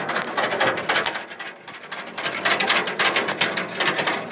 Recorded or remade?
recorded